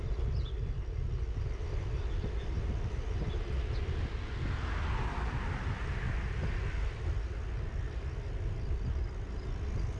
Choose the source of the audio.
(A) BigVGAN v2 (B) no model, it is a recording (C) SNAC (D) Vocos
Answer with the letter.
B